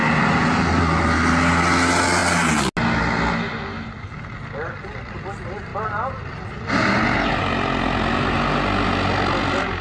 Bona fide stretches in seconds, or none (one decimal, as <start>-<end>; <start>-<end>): 0.0-9.8